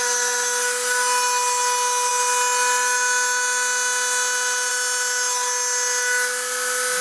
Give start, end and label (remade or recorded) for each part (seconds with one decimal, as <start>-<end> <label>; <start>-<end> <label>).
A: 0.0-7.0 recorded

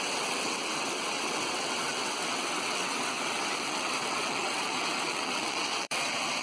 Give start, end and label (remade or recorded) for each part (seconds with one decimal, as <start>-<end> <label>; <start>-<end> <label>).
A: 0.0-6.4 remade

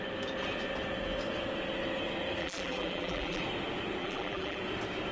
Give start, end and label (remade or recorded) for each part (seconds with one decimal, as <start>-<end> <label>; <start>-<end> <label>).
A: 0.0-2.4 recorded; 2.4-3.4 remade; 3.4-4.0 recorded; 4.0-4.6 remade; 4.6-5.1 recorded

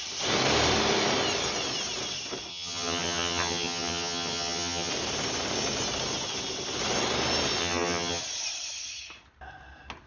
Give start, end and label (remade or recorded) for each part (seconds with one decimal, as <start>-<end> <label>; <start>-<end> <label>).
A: 0.0-2.5 recorded; 2.5-4.9 remade; 4.9-7.6 recorded; 7.6-8.2 remade; 8.2-10.1 recorded